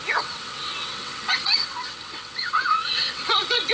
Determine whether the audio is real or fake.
fake